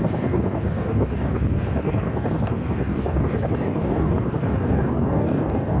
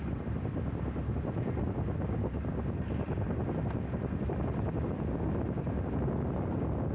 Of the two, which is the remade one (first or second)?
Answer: first